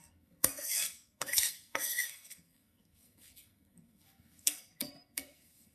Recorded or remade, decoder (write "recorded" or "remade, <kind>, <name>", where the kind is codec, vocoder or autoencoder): remade, codec, SNAC